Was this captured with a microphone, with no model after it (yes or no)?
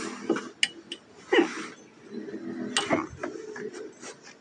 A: yes